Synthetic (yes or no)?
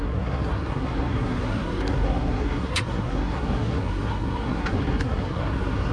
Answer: yes